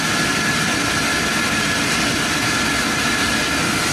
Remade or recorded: recorded